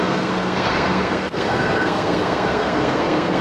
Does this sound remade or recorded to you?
remade